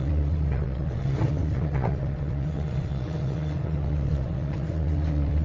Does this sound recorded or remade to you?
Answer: remade